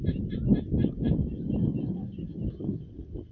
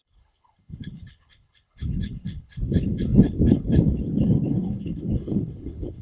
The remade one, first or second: second